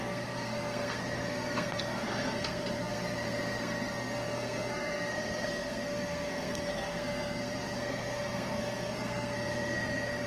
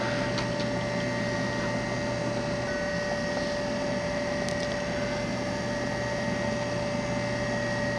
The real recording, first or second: second